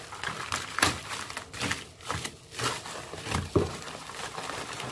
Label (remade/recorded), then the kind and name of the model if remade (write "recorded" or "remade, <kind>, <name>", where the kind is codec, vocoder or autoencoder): recorded